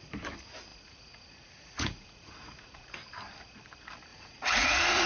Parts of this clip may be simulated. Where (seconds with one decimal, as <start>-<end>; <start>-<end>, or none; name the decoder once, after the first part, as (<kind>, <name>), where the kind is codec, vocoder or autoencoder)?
0.7-2.9 (vocoder, Vocos); 4.1-5.1